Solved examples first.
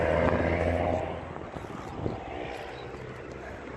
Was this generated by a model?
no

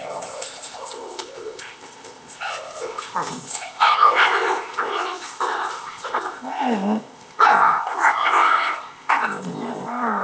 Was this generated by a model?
yes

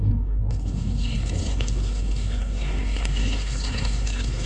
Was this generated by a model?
yes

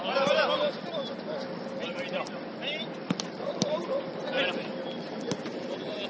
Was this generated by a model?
no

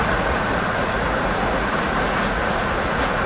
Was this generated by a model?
yes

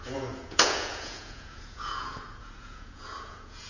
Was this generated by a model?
yes